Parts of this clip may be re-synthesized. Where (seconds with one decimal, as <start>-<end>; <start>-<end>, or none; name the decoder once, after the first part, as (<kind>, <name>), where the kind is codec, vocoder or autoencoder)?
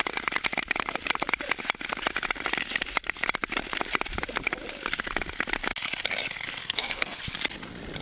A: 6.6-7.2 (codec, SNAC)